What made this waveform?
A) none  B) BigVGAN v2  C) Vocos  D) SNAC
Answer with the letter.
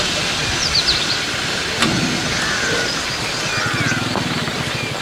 A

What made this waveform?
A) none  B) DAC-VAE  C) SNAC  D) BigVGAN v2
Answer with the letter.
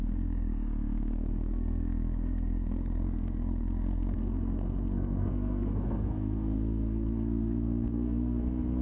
C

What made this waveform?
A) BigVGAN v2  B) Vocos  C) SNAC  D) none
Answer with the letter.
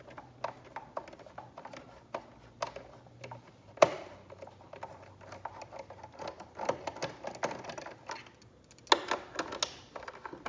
D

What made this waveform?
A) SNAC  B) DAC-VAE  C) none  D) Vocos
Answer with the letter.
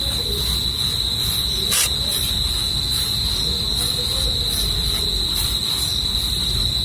C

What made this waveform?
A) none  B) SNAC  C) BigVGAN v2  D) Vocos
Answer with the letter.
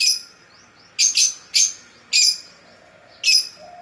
A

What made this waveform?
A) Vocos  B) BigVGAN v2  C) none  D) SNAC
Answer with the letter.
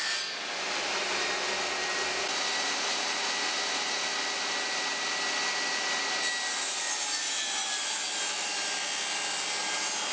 C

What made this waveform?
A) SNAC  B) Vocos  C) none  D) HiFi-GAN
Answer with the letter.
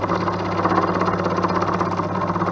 C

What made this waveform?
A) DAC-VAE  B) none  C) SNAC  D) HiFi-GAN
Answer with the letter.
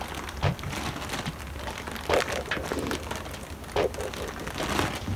B